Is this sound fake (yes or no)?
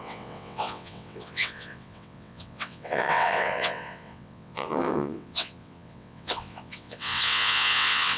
yes